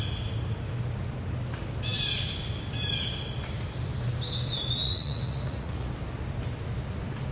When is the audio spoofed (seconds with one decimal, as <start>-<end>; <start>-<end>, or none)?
4.8-5.9